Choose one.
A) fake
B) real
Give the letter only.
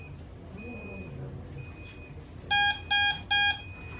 B